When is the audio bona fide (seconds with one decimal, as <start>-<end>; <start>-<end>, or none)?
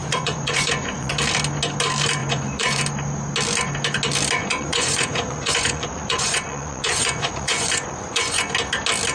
1.1-2.2; 2.8-4.4; 8.5-9.1